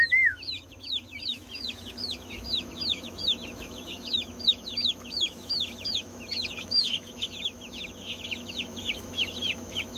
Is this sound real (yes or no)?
no